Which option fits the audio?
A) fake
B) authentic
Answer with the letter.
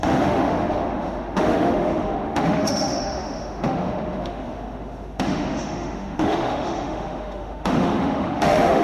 A